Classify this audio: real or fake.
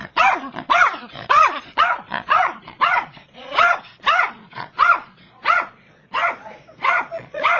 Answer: fake